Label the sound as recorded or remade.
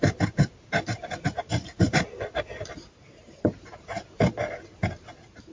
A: remade